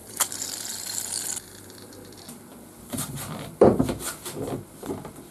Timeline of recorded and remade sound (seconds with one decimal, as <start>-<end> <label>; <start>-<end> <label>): 0.0-1.1 remade; 1.1-2.5 recorded; 2.5-3.8 remade; 3.8-5.3 recorded